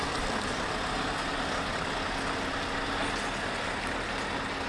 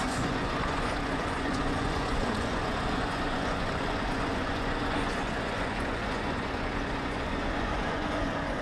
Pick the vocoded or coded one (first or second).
second